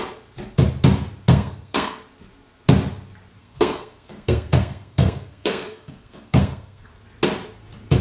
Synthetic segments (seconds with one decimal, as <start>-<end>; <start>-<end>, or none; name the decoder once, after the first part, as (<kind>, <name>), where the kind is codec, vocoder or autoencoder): 1.3-2.0 (codec, SNAC); 3.4-6.9